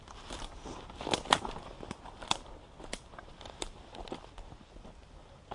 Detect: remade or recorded recorded